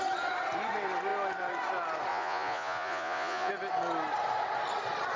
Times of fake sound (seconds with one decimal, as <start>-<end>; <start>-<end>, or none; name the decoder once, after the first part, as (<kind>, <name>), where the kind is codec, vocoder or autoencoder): 2.1-3.5 (vocoder, Vocos)